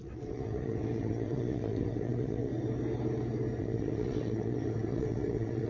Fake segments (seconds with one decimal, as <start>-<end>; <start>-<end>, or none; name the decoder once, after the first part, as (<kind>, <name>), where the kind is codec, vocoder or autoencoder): 0.0-2.5 (vocoder, WaveNeXt); 3.6-5.7